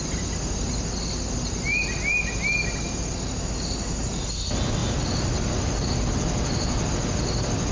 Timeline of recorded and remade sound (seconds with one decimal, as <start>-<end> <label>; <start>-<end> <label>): 0.0-7.7 recorded